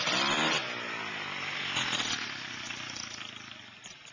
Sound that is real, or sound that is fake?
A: real